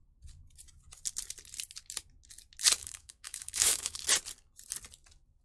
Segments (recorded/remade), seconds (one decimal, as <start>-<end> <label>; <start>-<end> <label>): 0.0-2.8 recorded; 2.8-4.0 remade; 4.0-5.4 recorded